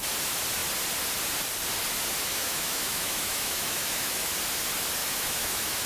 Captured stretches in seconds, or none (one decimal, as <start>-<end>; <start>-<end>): 0.0-2.3; 4.3-5.0